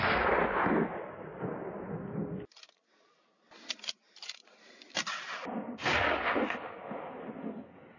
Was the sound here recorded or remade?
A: recorded